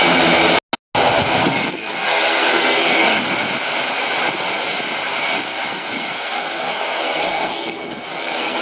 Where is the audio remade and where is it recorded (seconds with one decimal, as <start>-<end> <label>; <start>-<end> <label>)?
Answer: 0.0-1.4 recorded; 1.4-3.2 remade; 3.2-5.5 recorded; 5.5-8.6 remade